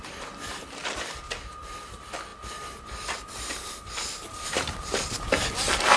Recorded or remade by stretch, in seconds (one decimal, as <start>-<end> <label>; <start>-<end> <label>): 0.0-6.0 recorded